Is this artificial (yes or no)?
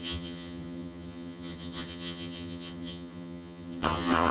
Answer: yes